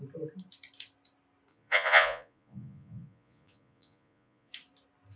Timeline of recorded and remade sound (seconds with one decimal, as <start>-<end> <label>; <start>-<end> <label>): 0.0-1.5 recorded; 1.5-4.5 remade; 4.5-5.2 recorded